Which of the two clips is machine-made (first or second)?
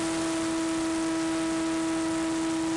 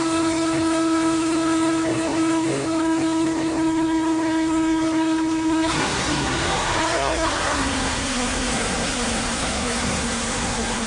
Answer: second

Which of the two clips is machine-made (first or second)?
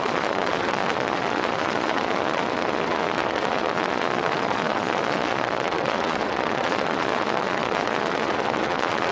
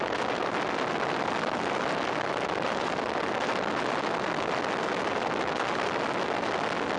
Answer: first